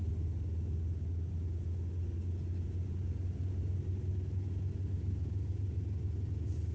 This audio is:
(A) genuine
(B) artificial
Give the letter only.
A